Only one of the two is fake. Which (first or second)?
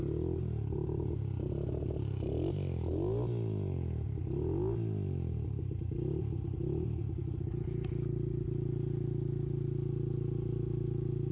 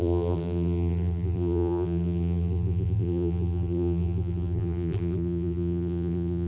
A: second